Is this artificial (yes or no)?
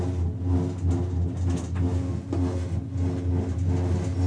no